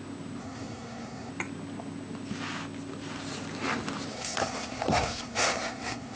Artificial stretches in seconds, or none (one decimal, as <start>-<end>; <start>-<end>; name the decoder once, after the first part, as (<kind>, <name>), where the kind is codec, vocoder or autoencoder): 0.4-1.3 (codec, SNAC); 4.1-6.2